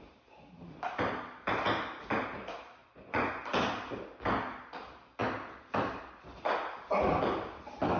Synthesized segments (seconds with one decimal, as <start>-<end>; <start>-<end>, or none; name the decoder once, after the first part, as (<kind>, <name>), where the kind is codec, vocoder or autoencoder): 2.8-3.4 (vocoder, Vocos)